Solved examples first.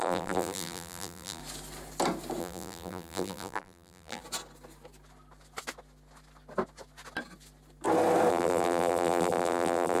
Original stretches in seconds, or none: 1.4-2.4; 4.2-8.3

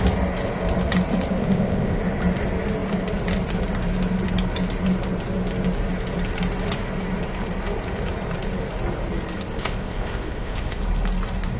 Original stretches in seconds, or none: 0.0-1.4; 2.0-9.6; 10.8-11.6

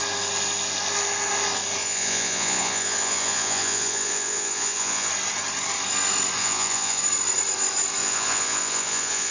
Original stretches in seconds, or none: 0.0-1.8; 5.1-6.4; 7.0-8.0

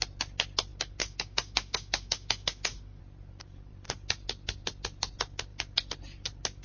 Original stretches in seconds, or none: 0.0-1.0; 3.0-6.6

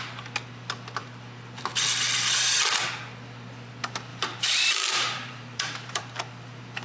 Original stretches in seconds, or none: 0.0-4.1; 6.0-6.8

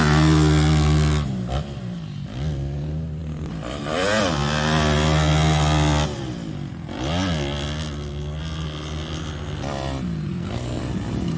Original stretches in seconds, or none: 0.0-10.3; 10.8-11.4